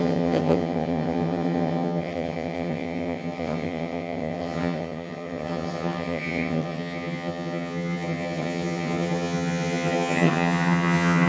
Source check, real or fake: fake